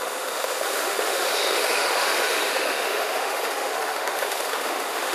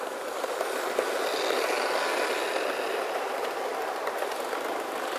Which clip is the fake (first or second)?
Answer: first